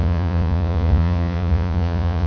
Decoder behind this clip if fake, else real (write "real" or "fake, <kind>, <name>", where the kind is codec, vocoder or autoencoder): fake, vocoder, Vocos